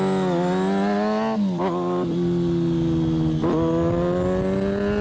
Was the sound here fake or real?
real